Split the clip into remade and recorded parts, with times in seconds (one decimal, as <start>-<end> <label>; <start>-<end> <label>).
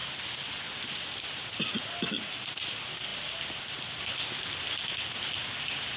0.0-6.0 recorded